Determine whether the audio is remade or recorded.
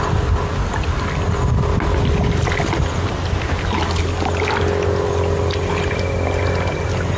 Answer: recorded